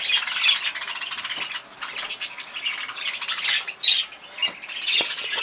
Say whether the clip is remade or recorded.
recorded